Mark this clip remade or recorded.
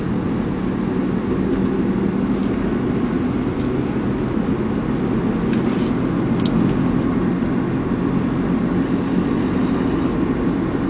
recorded